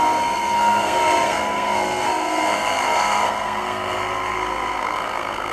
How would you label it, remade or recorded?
remade